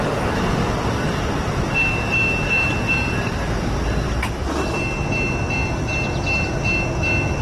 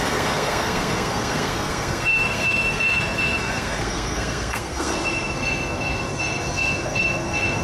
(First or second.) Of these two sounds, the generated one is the second